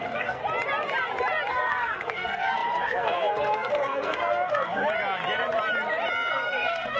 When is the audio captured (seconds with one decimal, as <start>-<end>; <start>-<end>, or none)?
0.4-1.5; 4.8-6.3

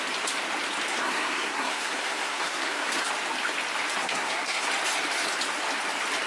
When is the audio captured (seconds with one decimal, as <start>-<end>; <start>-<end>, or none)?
0.0-0.9; 3.1-4.0; 4.7-6.3

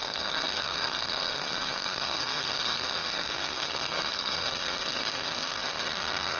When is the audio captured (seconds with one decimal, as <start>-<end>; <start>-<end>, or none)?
none

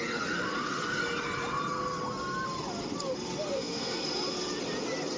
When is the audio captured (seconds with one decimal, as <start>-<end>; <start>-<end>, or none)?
0.0-3.5; 4.0-5.2

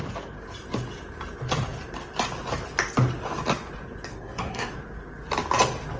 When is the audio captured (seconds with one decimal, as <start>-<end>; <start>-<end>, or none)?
0.0-4.1; 4.7-6.0